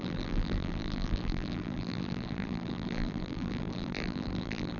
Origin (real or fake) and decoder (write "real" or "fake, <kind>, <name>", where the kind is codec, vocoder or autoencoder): fake, vocoder, BigVGAN v2